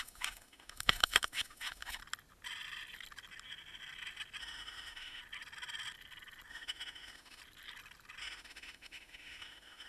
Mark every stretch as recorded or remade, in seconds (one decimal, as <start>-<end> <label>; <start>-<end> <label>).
0.0-2.0 remade; 2.0-4.4 recorded; 4.4-5.2 remade; 5.2-6.5 recorded; 6.5-7.4 remade; 7.4-8.2 recorded; 8.2-9.9 remade